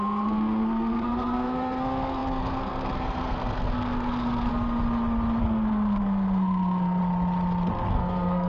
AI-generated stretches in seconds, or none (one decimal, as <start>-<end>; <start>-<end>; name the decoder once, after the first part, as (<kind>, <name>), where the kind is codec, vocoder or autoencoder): 0.0-4.5 (codec, SNAC); 5.4-7.0; 7.9-8.5